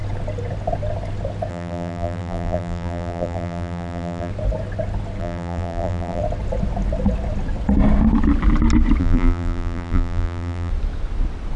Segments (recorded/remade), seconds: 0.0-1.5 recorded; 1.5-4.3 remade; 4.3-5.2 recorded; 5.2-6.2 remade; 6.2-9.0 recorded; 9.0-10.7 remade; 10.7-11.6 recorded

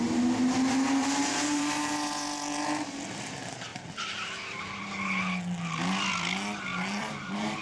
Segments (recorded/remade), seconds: 0.0-1.0 recorded; 1.0-1.9 remade; 1.9-3.7 recorded; 3.7-4.8 remade; 4.8-6.7 recorded; 6.7-7.6 remade